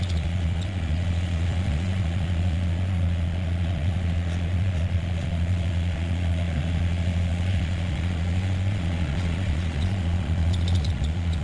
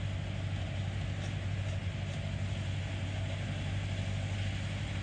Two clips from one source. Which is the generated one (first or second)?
first